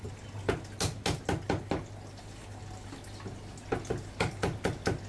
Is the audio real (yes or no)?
yes